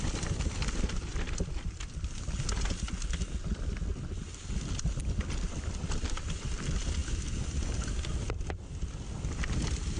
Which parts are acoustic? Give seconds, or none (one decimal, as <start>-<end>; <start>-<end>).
1.1-3.5; 3.9-5.0; 7.0-10.0